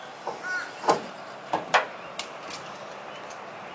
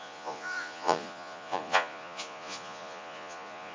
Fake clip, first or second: second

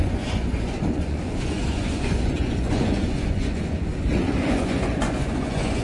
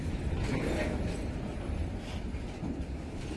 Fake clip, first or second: first